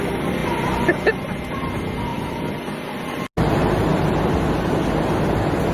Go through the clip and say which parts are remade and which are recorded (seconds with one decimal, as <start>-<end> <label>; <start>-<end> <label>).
0.0-2.1 recorded; 2.1-3.0 remade; 3.0-3.9 recorded; 3.9-4.5 remade; 4.5-5.7 recorded